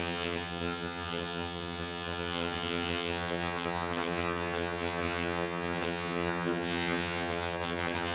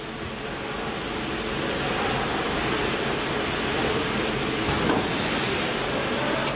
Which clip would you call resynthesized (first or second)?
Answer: first